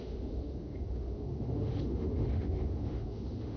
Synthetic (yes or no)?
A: yes